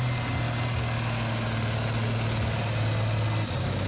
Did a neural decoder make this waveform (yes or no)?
no